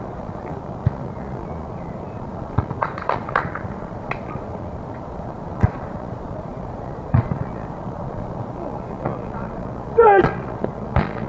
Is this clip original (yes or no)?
no